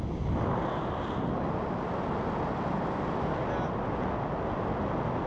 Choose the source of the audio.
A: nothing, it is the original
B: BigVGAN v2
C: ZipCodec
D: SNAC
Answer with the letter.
A